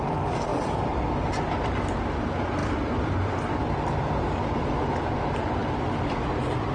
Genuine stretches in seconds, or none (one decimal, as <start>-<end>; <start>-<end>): 0.0-0.5; 1.7-2.6; 4.9-6.7